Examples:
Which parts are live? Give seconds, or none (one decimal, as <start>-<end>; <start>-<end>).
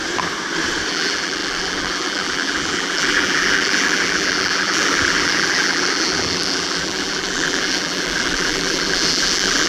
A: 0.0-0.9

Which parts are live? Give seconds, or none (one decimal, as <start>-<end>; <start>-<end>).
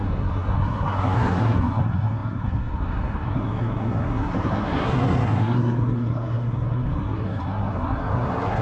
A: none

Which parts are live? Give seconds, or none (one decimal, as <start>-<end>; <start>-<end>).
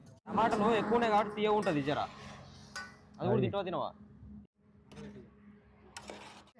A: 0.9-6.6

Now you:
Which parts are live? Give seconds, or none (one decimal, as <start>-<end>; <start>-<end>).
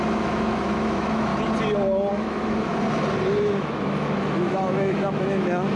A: 1.3-2.1; 2.7-3.4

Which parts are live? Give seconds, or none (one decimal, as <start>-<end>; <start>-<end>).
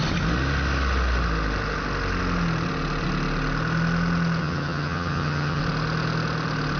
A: 0.0-4.4; 5.6-6.8